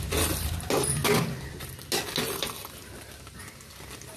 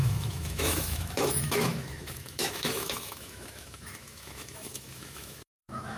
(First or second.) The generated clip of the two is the second